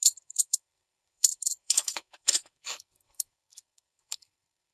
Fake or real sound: fake